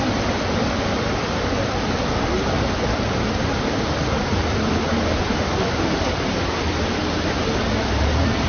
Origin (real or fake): real